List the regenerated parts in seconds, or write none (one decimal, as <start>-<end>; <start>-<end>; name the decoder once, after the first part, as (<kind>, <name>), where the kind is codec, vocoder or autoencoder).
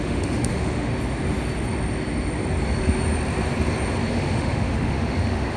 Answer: 0.0-0.9 (autoencoder, DAC-VAE); 4.1-5.6